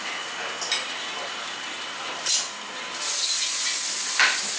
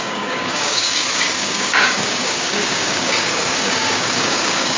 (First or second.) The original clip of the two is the first